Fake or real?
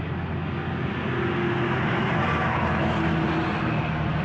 real